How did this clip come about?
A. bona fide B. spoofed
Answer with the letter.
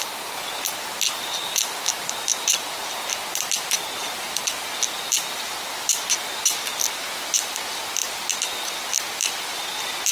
A